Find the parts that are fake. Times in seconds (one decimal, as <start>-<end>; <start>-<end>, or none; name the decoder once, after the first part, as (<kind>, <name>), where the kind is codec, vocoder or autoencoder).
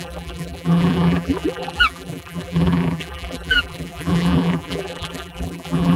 0.0-6.0 (vocoder, BigVGAN v2)